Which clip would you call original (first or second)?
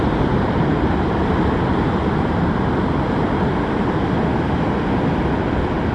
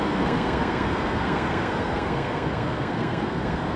first